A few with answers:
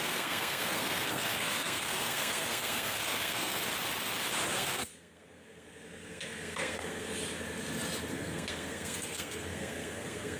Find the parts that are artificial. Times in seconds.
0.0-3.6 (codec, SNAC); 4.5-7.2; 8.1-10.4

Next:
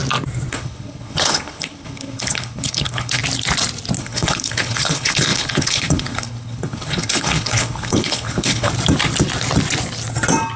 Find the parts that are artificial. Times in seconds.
0.5-3.2 (codec, HILCodec); 4.0-8.7

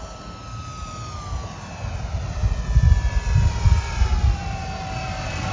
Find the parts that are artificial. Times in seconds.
none

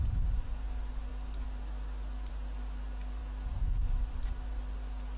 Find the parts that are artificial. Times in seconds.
none

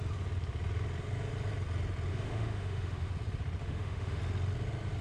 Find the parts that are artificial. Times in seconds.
2.1-3.1 (autoencoder, DAC-VAE); 3.6-4.2